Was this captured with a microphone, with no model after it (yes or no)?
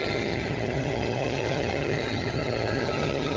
no